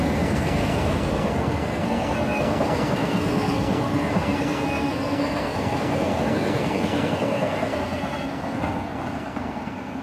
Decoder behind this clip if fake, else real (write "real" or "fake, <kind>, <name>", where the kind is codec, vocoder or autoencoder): fake, codec, SNAC